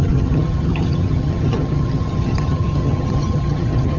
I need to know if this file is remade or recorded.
remade